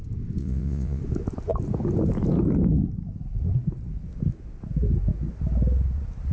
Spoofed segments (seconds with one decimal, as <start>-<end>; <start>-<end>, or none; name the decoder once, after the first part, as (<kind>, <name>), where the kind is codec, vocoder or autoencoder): 0.4-1.0 (vocoder, Vocos)

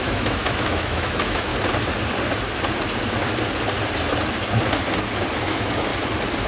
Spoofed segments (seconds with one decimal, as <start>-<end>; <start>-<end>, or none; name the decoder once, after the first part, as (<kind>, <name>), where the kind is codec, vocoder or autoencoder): 0.0-1.5 (autoencoder, DAC-VAE); 5.4-5.9

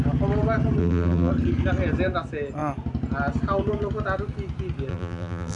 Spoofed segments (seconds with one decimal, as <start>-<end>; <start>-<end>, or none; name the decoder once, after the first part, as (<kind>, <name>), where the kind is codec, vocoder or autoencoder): 0.8-1.3 (vocoder, BigVGAN v2); 4.9-5.6

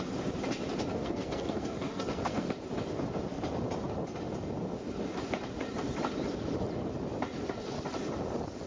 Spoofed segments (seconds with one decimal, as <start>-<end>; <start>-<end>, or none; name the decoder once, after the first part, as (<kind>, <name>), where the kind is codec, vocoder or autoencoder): 0.9-2.5 (codec, SNAC)